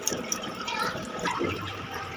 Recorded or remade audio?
remade